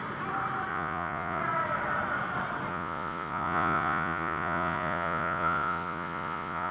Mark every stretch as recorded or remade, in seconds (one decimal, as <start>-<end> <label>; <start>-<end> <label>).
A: 0.0-0.7 recorded; 0.7-1.4 remade; 1.4-2.7 recorded; 2.7-6.7 remade